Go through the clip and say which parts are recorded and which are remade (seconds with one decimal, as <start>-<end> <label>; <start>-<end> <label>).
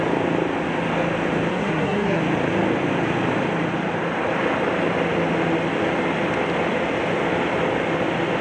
0.0-1.5 recorded; 1.5-2.2 remade; 2.2-8.4 recorded